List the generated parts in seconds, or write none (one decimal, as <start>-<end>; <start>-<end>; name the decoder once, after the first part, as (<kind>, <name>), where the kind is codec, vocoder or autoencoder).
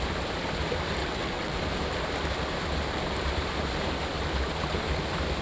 1.0-1.6 (vocoder, WaveNeXt)